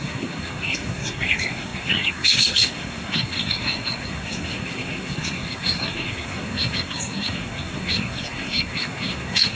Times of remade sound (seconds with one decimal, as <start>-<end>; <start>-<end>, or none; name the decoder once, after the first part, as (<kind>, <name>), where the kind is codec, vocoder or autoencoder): 0.0-9.5 (codec, SNAC)